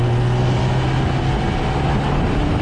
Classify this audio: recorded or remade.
recorded